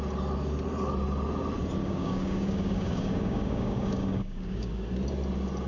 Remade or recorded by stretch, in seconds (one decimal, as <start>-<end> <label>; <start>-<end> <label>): 0.0-1.8 recorded; 1.8-4.7 remade; 4.7-5.7 recorded